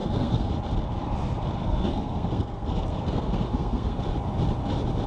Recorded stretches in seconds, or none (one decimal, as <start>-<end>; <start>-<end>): 0.5-1.6; 4.0-5.1

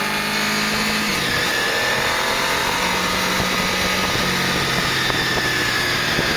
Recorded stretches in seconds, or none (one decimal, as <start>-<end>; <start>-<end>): 0.0-6.4

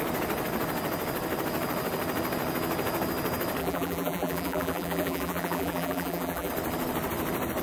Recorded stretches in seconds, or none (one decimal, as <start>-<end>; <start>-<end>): 0.0-3.6; 6.5-7.6

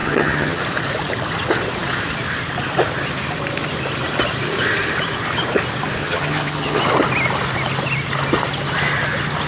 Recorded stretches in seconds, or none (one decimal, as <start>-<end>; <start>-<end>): 0.6-6.0; 6.8-9.5

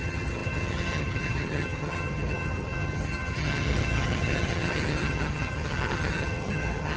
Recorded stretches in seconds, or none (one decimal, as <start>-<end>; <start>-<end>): none

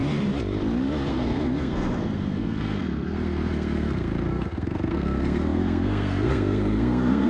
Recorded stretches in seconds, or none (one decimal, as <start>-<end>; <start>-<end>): 0.0-1.1

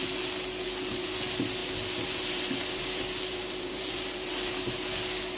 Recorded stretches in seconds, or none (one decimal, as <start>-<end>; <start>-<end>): 0.0-1.6; 4.7-5.4